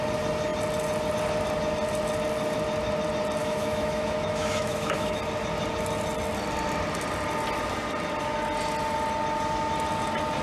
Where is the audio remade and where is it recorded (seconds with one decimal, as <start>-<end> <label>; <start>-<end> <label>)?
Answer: 0.0-3.4 recorded; 3.4-5.2 remade; 5.2-10.4 recorded